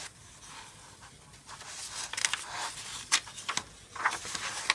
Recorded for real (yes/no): yes